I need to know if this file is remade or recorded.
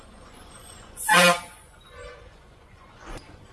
remade